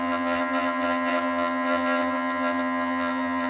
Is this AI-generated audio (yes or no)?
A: yes